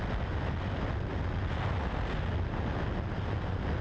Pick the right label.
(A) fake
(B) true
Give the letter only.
B